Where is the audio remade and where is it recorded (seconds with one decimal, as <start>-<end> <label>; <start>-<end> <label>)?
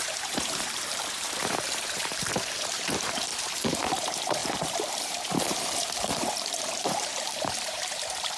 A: 0.0-8.4 remade